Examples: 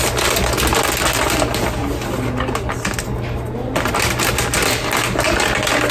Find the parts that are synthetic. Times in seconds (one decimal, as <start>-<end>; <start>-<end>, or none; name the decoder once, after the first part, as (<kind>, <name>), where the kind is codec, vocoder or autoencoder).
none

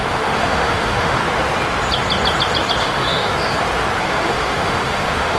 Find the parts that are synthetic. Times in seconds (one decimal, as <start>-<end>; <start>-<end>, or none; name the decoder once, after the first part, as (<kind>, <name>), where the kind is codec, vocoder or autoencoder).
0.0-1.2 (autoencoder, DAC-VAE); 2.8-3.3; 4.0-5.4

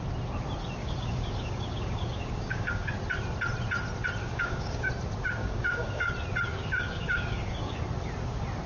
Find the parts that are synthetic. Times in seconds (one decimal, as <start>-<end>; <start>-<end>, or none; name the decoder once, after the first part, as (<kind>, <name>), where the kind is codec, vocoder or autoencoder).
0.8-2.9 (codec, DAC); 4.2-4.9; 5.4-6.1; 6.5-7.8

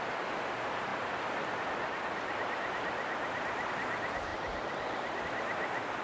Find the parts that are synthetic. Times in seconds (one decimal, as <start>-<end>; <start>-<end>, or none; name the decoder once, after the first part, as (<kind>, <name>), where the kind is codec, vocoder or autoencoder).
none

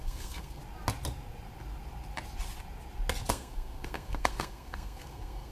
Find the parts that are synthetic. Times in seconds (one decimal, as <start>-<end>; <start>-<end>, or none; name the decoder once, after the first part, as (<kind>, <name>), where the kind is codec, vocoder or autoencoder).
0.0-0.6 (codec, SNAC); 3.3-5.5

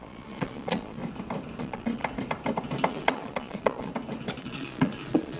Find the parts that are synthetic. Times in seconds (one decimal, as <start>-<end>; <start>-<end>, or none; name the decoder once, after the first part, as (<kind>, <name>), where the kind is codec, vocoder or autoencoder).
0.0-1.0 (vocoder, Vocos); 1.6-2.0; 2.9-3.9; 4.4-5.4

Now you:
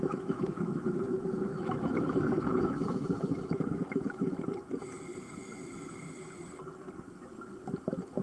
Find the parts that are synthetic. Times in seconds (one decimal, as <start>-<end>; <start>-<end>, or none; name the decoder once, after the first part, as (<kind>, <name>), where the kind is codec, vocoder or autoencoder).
0.0-4.3 (autoencoder, DAC-VAE)